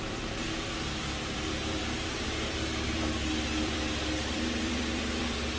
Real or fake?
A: fake